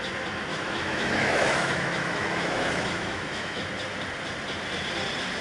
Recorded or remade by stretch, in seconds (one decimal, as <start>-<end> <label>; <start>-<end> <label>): 0.0-0.5 recorded; 0.5-3.7 remade; 3.7-5.4 recorded